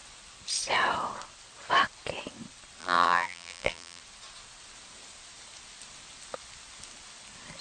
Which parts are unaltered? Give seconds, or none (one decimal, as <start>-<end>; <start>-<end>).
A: 0.0-2.8; 4.0-7.6